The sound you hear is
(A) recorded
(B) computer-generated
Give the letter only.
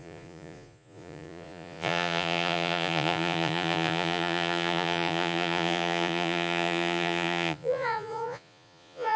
B